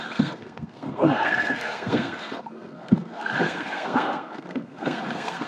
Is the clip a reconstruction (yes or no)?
yes